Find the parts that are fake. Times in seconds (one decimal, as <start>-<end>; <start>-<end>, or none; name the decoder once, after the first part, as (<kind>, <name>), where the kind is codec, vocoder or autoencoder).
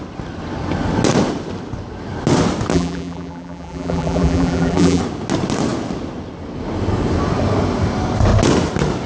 2.7-5.0 (vocoder, BigVGAN v2)